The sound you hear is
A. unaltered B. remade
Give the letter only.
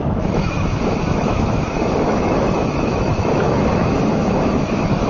B